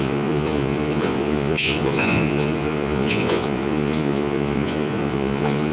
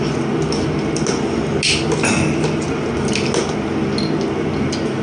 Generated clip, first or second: first